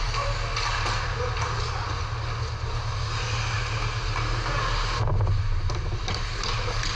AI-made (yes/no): no